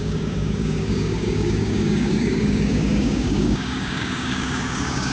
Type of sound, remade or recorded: remade